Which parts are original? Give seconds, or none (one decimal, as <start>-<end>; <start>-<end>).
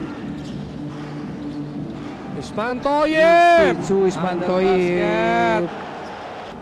0.0-6.6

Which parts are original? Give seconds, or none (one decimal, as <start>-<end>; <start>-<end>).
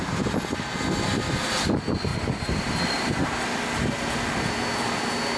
0.0-2.1; 2.7-5.4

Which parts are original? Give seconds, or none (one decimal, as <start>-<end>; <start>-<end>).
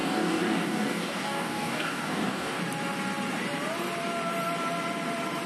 2.6-5.5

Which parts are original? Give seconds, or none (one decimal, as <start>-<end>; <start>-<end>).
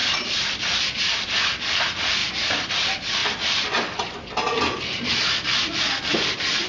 0.0-2.2; 2.7-6.7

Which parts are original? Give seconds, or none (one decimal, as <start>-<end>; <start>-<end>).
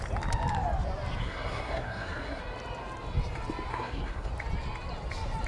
0.0-1.2; 2.4-3.7; 4.3-5.5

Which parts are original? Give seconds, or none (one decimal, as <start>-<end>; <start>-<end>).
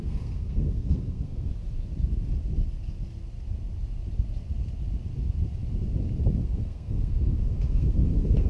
1.5-6.4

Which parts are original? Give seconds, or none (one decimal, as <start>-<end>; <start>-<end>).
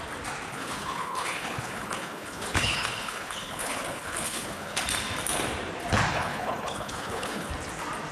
0.0-0.5; 4.8-6.1; 7.5-8.1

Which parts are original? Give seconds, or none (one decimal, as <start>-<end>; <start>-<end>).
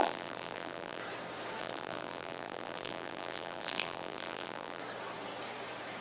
1.0-1.6; 4.8-6.0